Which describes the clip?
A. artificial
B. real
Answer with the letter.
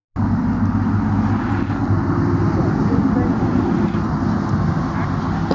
B